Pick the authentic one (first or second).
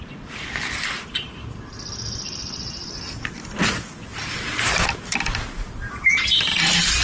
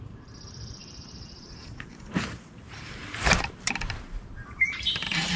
first